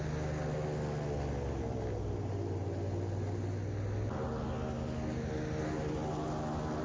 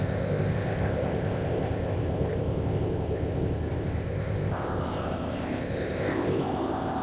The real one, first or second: first